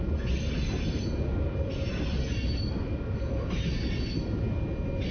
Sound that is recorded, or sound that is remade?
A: recorded